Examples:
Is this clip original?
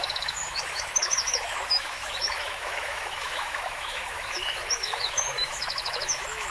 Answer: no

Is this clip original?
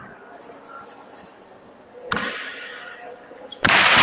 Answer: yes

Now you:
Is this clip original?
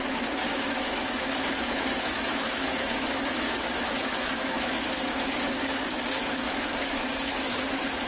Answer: no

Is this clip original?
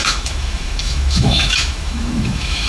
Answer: no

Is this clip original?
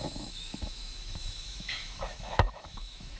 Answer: no